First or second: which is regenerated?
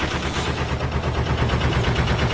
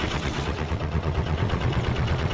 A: second